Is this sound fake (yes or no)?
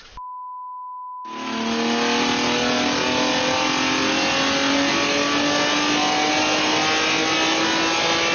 no